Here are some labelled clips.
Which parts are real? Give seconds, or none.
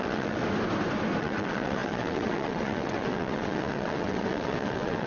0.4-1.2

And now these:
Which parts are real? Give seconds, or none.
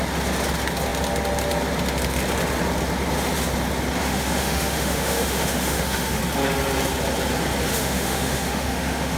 0.0-4.0; 6.2-7.7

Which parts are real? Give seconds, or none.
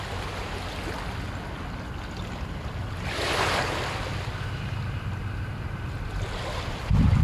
0.0-5.2; 6.1-7.2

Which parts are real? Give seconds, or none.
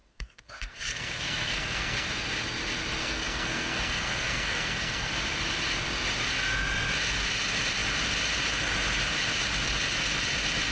2.1-3.0; 5.1-10.7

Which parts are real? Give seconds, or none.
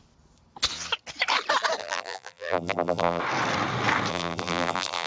0.0-1.8; 3.2-4.1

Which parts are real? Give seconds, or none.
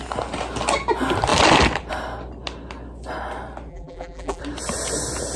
0.0-3.7; 4.4-5.4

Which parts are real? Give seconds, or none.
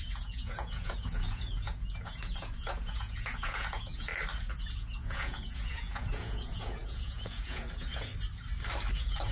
4.1-4.6; 8.1-8.9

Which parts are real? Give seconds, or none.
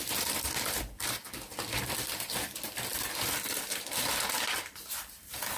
none